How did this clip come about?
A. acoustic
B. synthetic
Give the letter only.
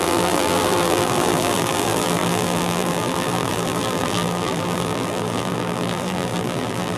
B